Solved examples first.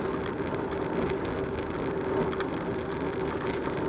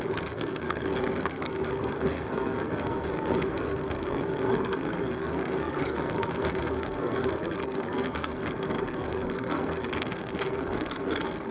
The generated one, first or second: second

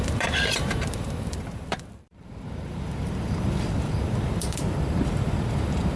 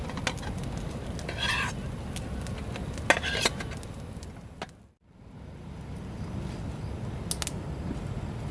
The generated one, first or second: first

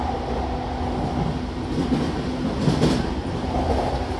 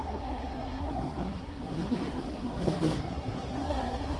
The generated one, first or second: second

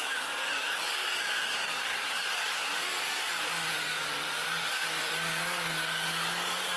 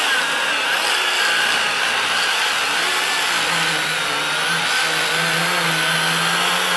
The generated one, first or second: first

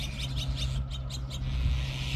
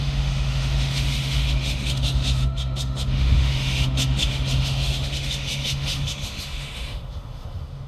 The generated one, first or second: second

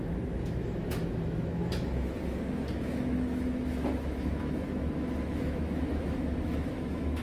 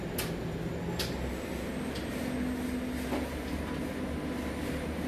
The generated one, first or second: first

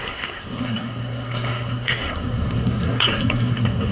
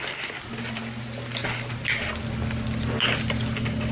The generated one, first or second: first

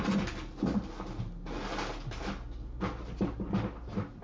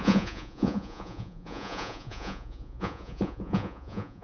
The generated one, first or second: second